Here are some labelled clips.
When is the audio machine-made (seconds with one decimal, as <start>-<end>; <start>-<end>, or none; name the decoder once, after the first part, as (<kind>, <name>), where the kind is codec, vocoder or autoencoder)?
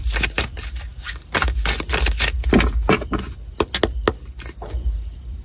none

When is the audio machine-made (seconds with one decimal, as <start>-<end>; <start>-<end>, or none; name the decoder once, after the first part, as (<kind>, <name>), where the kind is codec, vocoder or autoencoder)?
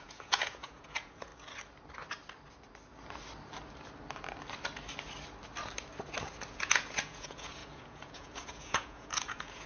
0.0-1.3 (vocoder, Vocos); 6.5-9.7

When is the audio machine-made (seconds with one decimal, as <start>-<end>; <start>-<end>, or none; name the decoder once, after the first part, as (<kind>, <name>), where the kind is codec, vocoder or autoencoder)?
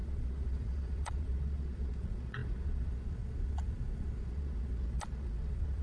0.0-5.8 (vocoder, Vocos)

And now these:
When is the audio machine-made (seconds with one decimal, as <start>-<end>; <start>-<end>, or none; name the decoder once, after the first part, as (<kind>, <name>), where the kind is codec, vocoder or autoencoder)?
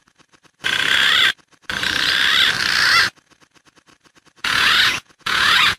4.4-5.8 (vocoder, Vocos)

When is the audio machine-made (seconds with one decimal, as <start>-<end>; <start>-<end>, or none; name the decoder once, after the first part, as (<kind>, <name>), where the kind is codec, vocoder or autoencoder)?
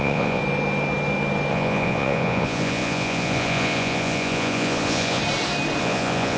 0.0-0.4 (vocoder, Vocos); 1.5-5.2; 5.8-6.4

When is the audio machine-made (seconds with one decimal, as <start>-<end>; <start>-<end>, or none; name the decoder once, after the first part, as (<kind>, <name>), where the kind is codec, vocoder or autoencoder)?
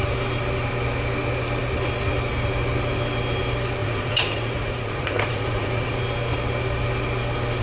3.8-6.0 (vocoder, Vocos)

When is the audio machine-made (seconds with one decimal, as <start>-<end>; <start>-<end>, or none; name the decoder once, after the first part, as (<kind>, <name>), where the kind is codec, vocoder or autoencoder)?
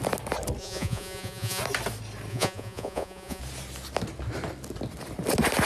0.6-1.6 (vocoder, Vocos); 2.3-3.4